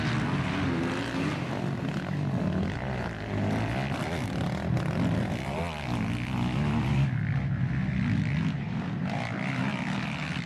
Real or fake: real